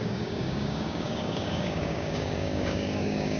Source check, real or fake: fake